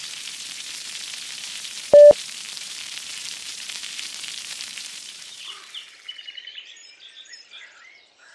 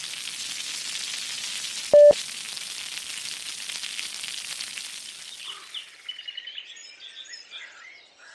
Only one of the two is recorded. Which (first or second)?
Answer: second